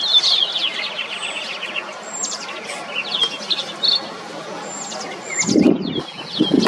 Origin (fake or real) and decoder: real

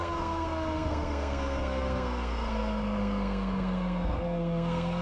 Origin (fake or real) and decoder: fake, codec, SNAC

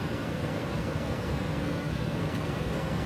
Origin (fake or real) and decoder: fake, codec, SNAC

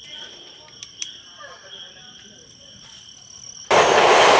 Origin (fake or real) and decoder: real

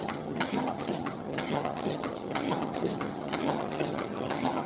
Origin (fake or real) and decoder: fake, vocoder, HiFi-GAN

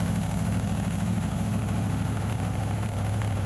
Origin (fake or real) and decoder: fake, autoencoder, DAC-VAE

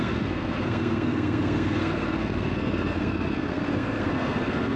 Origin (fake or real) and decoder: fake, codec, SNAC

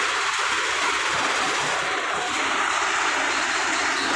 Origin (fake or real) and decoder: real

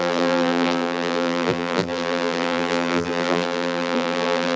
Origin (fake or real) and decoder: fake, vocoder, BigVGAN v2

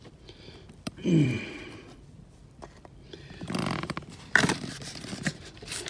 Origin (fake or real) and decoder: fake, vocoder, BigVGAN v2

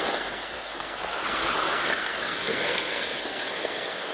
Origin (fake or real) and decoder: fake, codec, SNAC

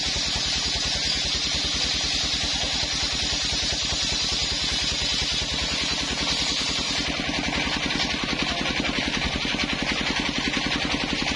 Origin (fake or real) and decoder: real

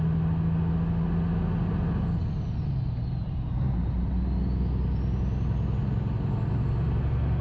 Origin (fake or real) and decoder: real